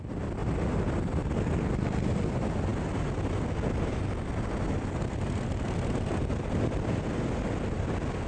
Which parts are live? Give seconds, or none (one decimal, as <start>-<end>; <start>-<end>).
0.0-8.3